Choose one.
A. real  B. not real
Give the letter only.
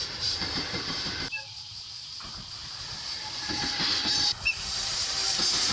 B